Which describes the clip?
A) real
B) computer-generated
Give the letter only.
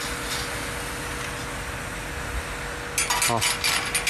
A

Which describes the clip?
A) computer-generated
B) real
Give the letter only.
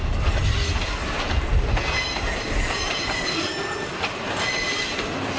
B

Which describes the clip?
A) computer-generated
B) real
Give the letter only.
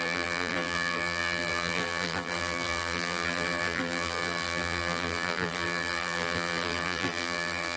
A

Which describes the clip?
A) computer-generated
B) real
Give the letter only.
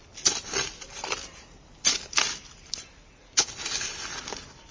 B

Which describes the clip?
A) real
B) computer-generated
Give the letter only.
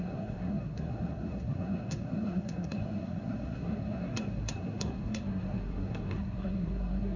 B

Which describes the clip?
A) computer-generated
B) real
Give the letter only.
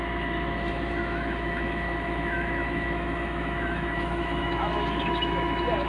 A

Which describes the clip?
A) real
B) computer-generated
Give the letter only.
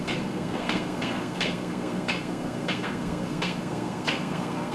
B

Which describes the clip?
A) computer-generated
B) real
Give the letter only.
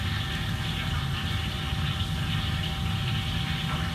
B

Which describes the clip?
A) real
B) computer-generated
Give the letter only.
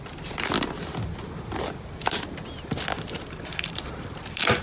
A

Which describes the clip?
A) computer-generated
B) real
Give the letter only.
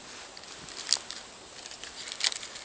B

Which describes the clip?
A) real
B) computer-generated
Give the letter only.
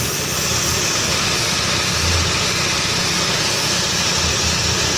A